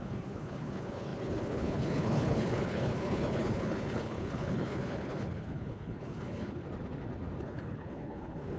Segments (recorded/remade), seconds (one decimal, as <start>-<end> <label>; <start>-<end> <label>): 0.0-6.6 remade; 6.6-7.4 recorded; 7.4-8.6 remade